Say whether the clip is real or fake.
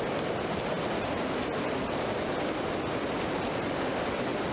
real